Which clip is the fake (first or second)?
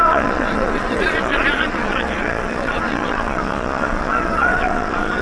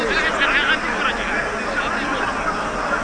first